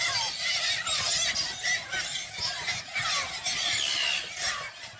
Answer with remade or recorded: recorded